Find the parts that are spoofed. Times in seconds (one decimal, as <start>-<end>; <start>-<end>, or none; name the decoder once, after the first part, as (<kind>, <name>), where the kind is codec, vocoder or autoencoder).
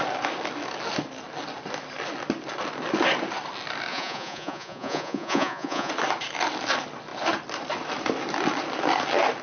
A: 3.9-5.9 (vocoder, Vocos)